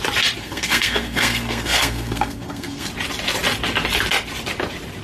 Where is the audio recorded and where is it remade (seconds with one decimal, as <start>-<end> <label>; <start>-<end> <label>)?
0.0-0.4 recorded; 0.4-2.9 remade; 2.9-5.0 recorded